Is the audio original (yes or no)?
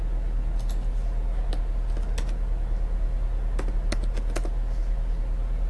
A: yes